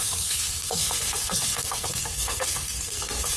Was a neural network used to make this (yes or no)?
yes